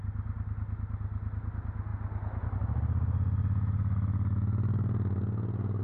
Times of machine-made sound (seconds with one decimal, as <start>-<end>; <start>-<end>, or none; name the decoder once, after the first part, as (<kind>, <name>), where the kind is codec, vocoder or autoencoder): none